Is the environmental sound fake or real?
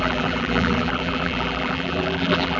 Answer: fake